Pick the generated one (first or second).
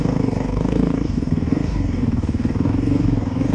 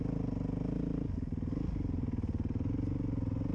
first